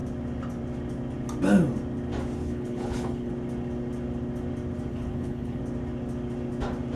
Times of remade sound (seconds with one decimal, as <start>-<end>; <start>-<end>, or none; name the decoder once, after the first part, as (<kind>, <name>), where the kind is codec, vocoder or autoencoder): 2.4-3.3 (codec, HILCodec); 4.9-5.6